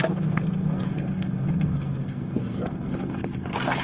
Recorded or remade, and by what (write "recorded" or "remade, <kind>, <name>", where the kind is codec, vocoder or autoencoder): remade, codec, SNAC